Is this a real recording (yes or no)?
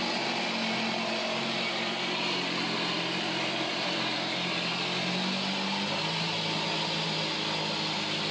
yes